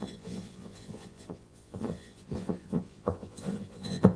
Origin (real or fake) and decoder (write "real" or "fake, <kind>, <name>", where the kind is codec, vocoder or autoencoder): fake, vocoder, Vocos